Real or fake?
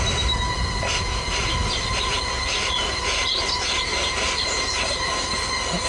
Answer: real